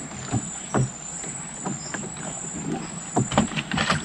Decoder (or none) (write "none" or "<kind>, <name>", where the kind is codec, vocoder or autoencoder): none